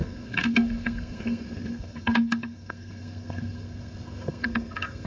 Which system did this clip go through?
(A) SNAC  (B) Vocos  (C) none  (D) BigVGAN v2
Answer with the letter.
A